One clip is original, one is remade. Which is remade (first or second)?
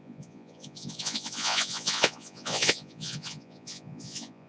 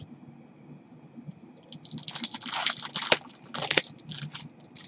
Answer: first